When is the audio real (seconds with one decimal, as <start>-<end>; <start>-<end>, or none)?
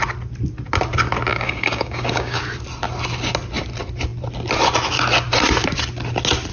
0.0-1.3; 2.4-6.5